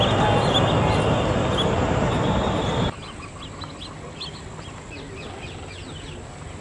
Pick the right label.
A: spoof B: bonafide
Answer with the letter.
B